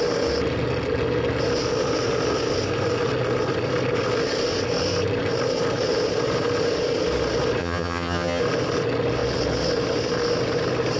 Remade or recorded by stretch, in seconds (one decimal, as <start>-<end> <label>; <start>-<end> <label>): 0.0-7.6 recorded; 7.6-8.4 remade; 8.4-11.0 recorded